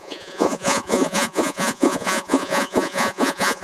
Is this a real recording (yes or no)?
no